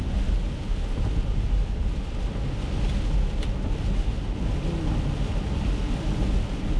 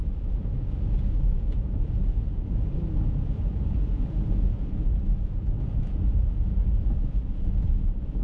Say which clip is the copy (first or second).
second